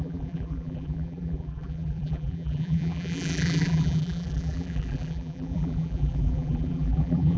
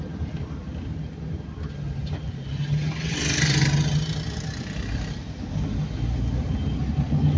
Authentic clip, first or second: second